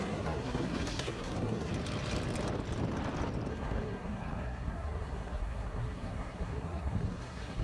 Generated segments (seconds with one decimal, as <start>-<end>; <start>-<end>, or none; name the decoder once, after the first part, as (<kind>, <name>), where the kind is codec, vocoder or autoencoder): 0.0-1.7 (codec, SNAC); 3.5-7.6